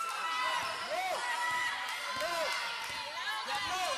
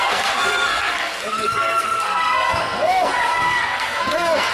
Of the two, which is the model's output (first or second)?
second